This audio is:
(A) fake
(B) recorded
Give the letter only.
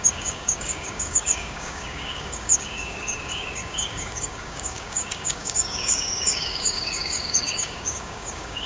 A